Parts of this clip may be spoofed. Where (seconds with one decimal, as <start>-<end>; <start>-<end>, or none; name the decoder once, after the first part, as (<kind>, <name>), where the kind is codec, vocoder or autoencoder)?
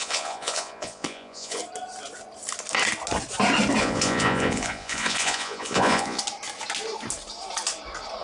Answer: 0.0-1.6 (vocoder, Vocos); 3.8-6.2